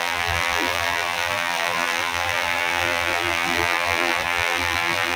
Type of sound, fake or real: fake